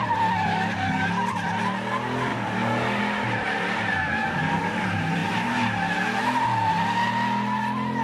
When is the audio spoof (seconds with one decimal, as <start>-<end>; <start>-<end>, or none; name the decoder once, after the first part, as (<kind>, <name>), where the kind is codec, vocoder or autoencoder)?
0.5-1.1 (codec, DAC); 2.3-3.0; 4.2-4.8